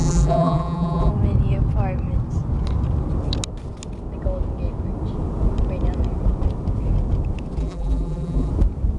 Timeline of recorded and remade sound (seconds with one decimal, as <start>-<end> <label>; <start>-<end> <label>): 0.0-1.1 remade; 1.1-7.6 recorded; 7.6-8.5 remade; 8.5-9.0 recorded